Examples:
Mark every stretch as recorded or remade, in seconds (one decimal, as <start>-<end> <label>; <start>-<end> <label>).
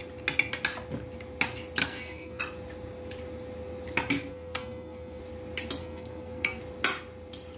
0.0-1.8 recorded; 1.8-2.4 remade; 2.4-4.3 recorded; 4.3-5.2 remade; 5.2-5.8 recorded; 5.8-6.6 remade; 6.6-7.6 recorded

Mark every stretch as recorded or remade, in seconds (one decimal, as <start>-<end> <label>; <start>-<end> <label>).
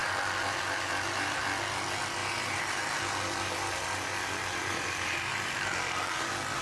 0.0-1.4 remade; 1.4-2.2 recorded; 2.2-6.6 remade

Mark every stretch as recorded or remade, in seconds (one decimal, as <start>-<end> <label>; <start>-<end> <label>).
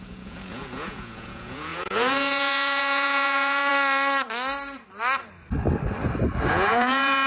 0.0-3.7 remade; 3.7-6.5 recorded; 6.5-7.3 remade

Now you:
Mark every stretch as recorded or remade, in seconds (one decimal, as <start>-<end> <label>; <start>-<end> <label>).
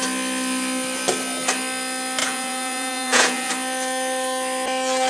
0.0-2.2 recorded; 2.2-3.5 remade; 3.5-5.1 recorded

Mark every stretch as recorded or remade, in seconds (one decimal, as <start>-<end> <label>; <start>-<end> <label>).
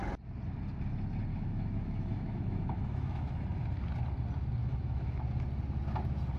0.0-1.3 recorded; 1.3-3.3 remade; 3.3-4.6 recorded; 4.6-5.2 remade; 5.2-6.4 recorded